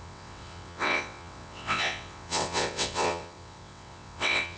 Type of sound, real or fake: fake